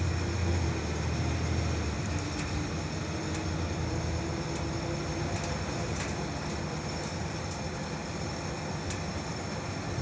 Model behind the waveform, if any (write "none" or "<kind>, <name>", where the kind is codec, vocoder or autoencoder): none